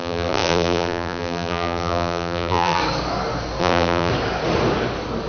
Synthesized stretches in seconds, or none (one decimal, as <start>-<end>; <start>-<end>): 0.0-2.8; 3.6-4.1